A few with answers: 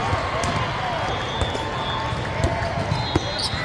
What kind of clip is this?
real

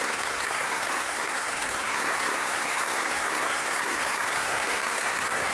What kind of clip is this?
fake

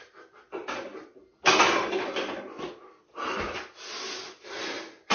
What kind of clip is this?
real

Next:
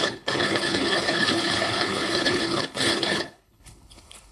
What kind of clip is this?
fake